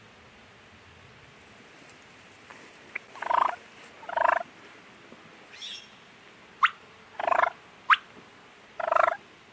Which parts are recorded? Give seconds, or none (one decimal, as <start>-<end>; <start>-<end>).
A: 0.0-9.5